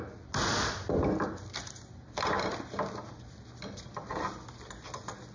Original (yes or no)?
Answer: yes